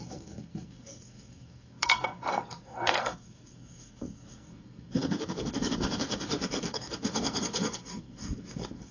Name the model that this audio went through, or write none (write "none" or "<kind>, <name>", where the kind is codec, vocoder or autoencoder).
codec, SNAC